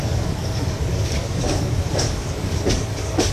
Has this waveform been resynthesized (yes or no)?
yes